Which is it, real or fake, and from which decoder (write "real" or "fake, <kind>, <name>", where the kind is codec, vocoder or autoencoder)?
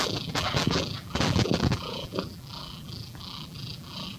fake, vocoder, BigVGAN v2